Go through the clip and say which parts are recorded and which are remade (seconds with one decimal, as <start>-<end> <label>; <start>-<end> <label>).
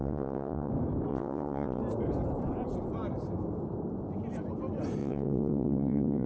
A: 0.0-0.7 remade; 0.7-1.1 recorded; 1.1-1.8 remade; 1.8-5.0 recorded; 5.0-6.3 remade